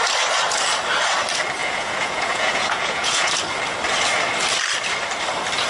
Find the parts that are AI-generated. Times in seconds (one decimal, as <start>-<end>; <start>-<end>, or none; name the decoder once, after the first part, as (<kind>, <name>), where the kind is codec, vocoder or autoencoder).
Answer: 1.6-3.3 (vocoder, Vocos)